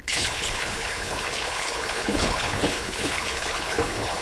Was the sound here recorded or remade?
remade